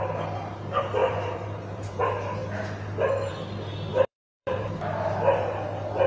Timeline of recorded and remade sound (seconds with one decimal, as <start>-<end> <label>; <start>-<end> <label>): 0.0-1.0 recorded; 1.0-2.0 remade; 2.0-3.9 recorded; 3.9-4.8 remade; 4.8-6.1 recorded